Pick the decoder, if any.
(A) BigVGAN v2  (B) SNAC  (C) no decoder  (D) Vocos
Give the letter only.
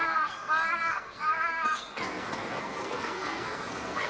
B